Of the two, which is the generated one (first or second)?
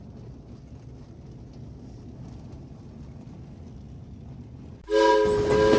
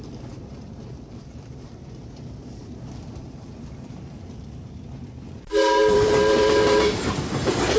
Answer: second